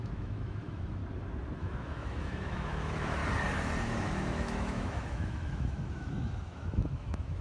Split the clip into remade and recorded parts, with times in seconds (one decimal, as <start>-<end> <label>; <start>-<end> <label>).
0.0-1.0 remade; 1.0-1.6 recorded; 1.6-3.2 remade; 3.2-3.8 recorded; 3.8-7.4 remade